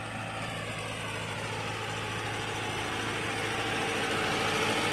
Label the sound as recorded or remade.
recorded